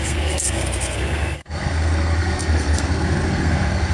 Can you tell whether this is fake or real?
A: fake